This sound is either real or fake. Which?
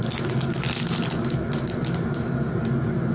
real